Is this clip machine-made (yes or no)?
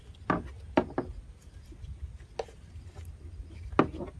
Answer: no